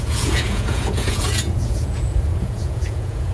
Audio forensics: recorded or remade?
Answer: remade